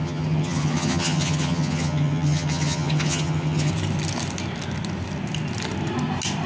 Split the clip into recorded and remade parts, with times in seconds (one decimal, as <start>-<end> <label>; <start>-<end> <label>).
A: 0.0-3.7 remade; 3.7-6.5 recorded